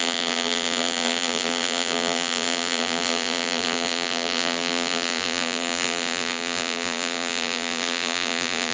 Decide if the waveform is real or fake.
fake